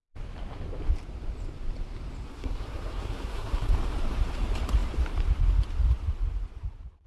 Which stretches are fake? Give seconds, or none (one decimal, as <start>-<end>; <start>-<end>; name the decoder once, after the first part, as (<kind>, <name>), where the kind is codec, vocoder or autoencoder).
2.3-3.7 (codec, SNAC)